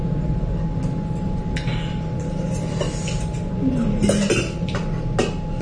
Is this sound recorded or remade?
recorded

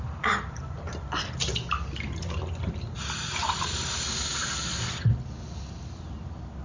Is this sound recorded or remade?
recorded